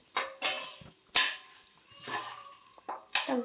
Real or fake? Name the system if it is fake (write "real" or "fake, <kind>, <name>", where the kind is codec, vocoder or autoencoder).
real